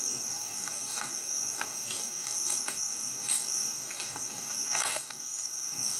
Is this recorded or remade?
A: remade